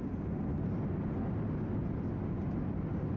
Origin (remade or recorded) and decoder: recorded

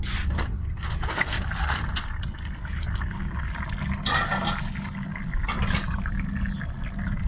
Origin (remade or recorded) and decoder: recorded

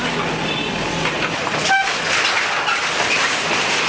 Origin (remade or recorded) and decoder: remade, vocoder, BigVGAN v2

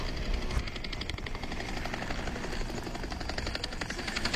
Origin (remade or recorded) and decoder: recorded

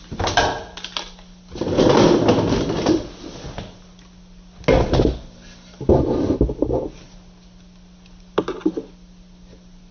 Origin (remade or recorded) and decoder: recorded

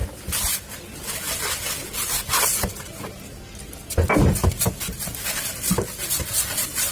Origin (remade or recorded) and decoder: recorded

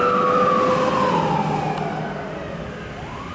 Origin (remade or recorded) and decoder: recorded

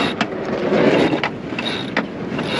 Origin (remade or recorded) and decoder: recorded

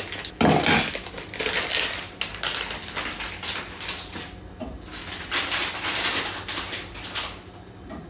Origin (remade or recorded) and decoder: recorded